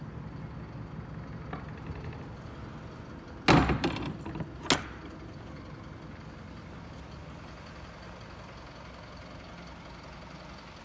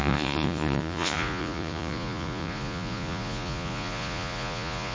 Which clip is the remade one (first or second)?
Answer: second